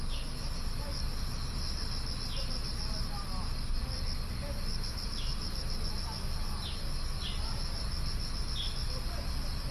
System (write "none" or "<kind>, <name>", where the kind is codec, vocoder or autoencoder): none